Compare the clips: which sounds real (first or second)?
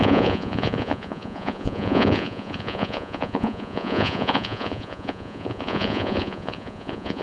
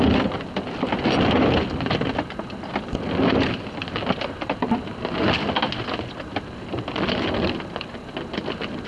second